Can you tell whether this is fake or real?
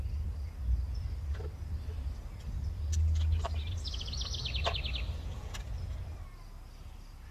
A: real